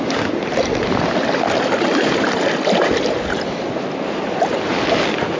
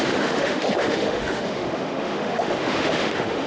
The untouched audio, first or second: first